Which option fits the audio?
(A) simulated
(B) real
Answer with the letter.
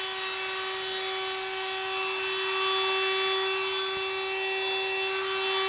B